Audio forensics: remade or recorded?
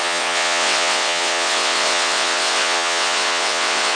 remade